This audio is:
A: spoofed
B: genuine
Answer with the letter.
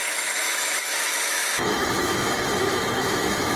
A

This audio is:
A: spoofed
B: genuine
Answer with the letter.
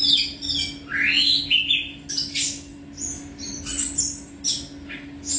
B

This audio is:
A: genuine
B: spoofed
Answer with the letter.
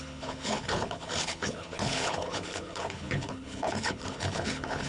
B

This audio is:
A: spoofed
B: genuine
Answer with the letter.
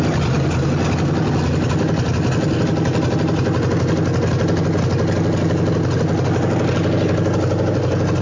B